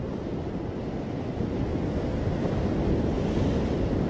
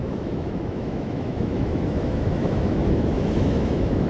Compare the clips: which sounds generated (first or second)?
second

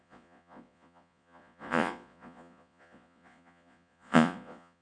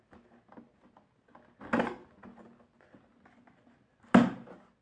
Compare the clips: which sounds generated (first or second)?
first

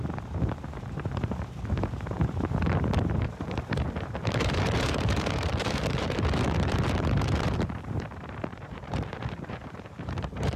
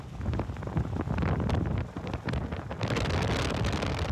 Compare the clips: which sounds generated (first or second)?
first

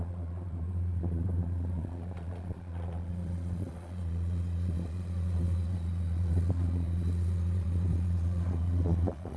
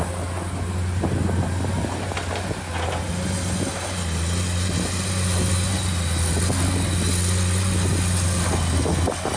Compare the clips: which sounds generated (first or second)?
first